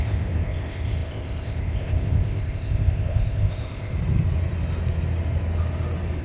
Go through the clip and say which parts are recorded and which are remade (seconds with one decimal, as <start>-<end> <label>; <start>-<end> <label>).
0.0-3.9 remade; 3.9-6.2 recorded